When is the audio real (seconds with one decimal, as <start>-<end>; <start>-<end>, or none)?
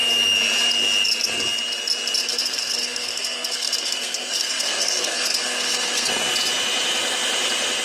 0.0-2.2; 6.1-7.8